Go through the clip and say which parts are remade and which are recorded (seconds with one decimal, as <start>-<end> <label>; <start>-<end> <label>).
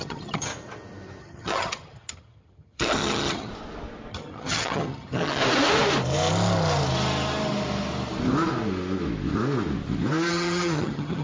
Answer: 0.0-0.5 remade; 0.5-1.2 recorded; 1.2-3.5 remade; 3.5-4.1 recorded; 4.1-5.4 remade; 5.4-10.3 recorded; 10.3-11.2 remade